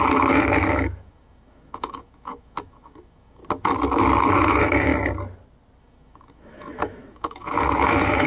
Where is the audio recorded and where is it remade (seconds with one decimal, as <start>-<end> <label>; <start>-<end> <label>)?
0.0-3.4 remade; 3.4-4.3 recorded; 4.3-4.9 remade; 4.9-5.8 recorded; 5.8-8.3 remade